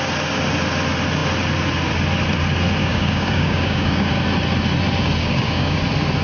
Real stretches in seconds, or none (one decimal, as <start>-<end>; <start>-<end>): 0.0-2.8; 4.1-5.2; 5.8-6.2